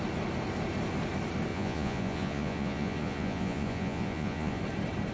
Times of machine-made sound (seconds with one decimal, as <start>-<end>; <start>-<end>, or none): 1.5-4.6